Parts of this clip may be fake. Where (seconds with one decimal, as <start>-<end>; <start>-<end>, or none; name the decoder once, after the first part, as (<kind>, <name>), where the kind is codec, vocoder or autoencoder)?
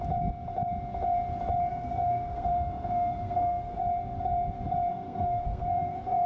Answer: 1.7-3.8 (codec, SNAC); 4.9-6.3